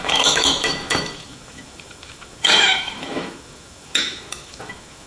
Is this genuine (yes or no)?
no